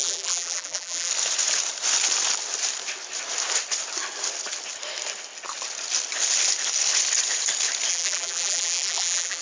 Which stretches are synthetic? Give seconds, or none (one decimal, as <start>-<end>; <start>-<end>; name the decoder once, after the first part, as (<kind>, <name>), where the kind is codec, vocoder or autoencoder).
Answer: 0.0-1.1 (vocoder, BigVGAN v2); 7.9-9.4